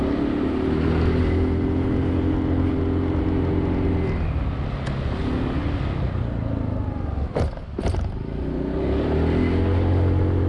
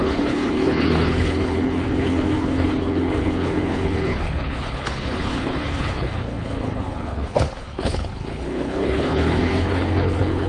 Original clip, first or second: first